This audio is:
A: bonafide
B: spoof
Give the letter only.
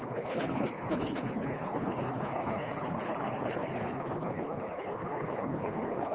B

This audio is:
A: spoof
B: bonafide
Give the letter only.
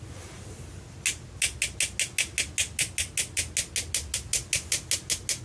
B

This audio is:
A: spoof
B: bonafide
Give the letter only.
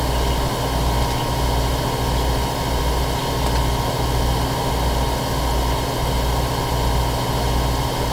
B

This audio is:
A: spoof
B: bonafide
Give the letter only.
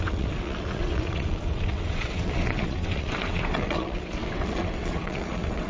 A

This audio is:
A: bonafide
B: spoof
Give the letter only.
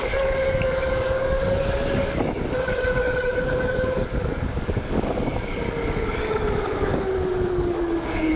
B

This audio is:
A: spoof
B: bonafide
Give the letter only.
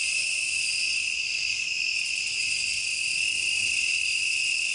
B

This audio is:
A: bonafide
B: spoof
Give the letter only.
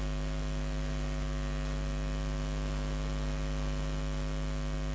A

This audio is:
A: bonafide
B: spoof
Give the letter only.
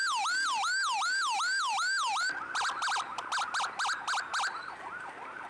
A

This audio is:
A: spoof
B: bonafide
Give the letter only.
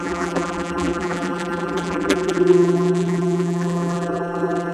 A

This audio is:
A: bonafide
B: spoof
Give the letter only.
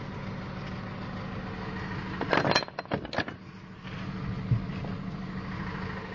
A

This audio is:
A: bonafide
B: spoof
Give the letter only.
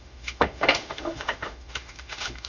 B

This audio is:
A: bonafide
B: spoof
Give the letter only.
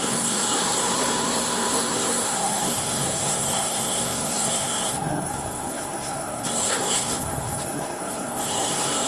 B